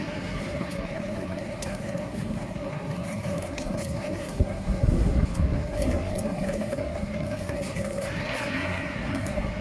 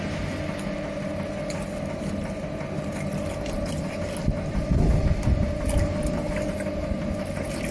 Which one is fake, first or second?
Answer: first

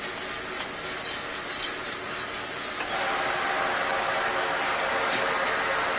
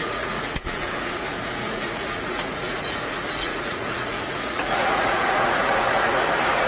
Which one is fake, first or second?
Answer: second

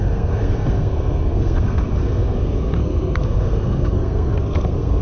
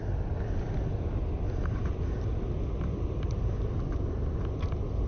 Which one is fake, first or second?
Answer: first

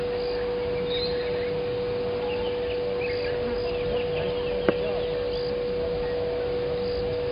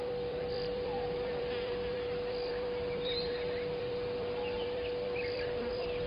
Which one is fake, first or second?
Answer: second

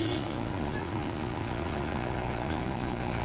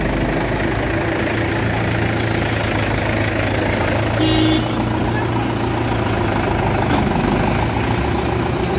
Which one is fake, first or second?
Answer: first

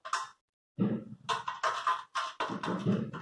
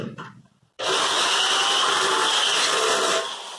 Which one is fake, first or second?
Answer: second